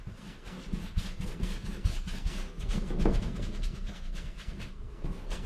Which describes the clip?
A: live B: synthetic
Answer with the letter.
B